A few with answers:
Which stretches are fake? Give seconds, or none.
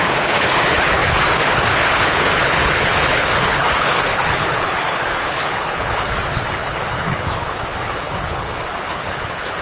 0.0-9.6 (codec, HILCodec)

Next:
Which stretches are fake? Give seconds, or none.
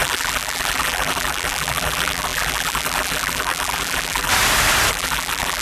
0.0-4.3 (vocoder, BigVGAN v2); 4.9-5.6